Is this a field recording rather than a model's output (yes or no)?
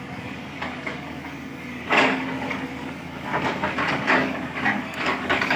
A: no